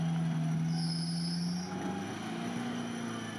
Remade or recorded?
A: recorded